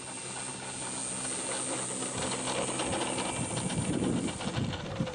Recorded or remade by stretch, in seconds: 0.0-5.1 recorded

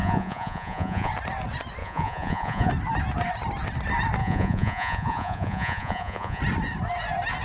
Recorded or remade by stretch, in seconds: 0.0-1.1 remade; 1.1-1.8 recorded; 1.8-2.7 remade; 2.7-4.2 recorded; 4.2-6.4 remade; 6.4-7.4 recorded

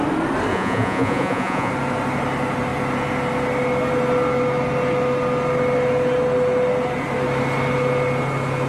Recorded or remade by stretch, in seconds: 0.0-0.5 recorded; 0.5-1.7 remade; 1.7-8.7 recorded

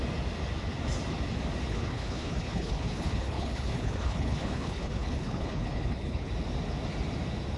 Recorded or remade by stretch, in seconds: 0.0-1.7 recorded; 1.7-6.3 remade; 6.3-7.6 recorded

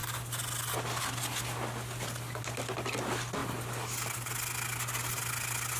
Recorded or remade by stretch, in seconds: 0.0-5.8 recorded

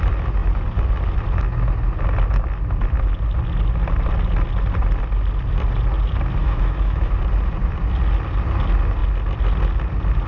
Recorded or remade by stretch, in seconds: 0.0-6.4 recorded; 6.4-7.1 remade; 7.1-10.3 recorded

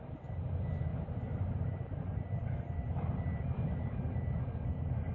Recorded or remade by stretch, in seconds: 0.0-0.9 recorded; 0.9-4.0 remade; 4.0-5.1 recorded